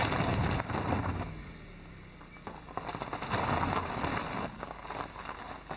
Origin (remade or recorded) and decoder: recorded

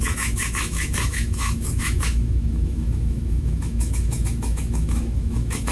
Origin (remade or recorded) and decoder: remade, autoencoder, DAC-VAE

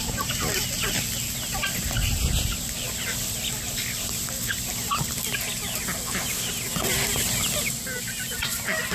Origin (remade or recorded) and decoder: recorded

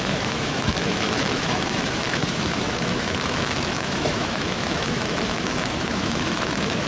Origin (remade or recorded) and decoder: remade, autoencoder, DAC-VAE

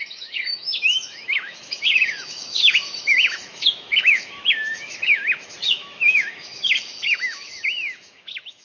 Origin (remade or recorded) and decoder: remade, autoencoder, DAC-VAE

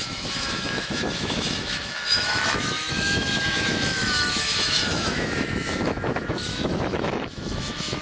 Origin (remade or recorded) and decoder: remade, autoencoder, DAC-VAE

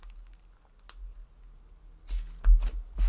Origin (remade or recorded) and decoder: recorded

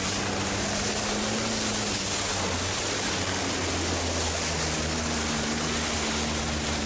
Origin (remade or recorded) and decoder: recorded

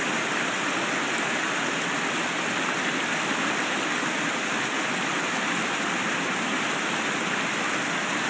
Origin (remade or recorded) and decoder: recorded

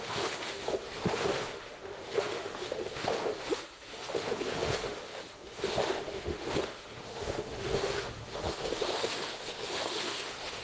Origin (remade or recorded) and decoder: remade, autoencoder, DAC-VAE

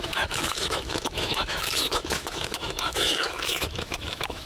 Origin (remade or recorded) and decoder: remade, autoencoder, DAC-VAE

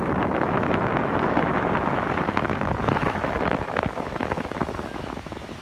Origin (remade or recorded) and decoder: remade, autoencoder, DAC-VAE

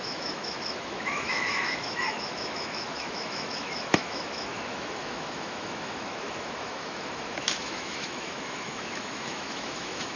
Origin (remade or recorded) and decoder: remade, autoencoder, DAC-VAE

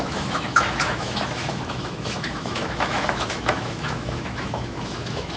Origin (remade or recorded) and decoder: remade, autoencoder, DAC-VAE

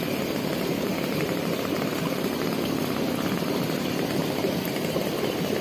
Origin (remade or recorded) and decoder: recorded